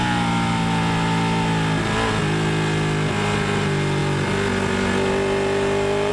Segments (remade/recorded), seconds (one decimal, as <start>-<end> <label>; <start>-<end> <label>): 0.0-6.1 recorded